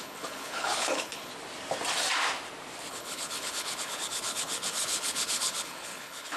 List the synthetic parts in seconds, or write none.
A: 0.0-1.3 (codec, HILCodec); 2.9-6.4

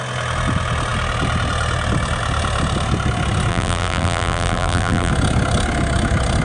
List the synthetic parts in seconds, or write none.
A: 3.5-5.1 (vocoder, BigVGAN v2)

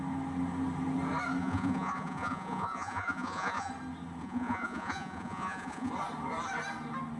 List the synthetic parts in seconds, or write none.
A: 1.4-3.7 (vocoder, Vocos); 4.2-5.9